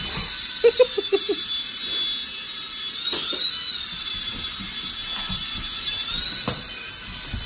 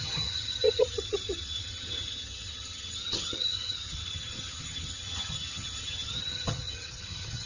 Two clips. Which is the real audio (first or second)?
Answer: first